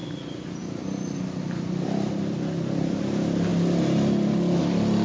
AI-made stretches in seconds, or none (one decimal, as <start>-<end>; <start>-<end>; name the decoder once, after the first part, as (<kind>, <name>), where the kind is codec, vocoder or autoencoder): 0.0-3.0 (vocoder, BigVGAN v2)